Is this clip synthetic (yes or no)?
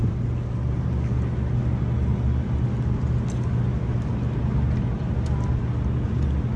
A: no